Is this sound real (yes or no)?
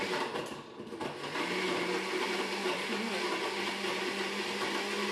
yes